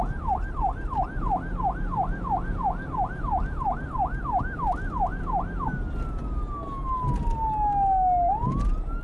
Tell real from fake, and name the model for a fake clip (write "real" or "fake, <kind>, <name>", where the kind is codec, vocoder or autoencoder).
real